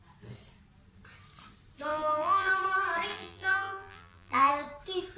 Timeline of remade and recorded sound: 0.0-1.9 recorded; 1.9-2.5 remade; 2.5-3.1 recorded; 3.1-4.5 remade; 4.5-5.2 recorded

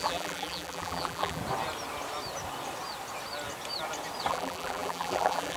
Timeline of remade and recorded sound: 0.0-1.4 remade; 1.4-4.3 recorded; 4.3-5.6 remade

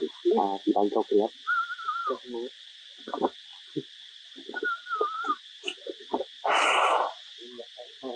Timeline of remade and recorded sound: 0.0-8.2 remade

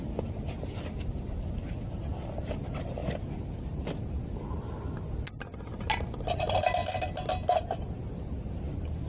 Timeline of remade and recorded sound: 0.0-3.0 recorded; 3.0-3.8 remade; 3.8-6.8 recorded; 6.8-7.3 remade; 7.3-9.1 recorded